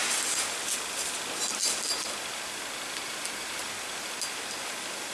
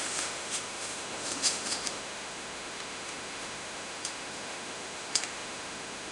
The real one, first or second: first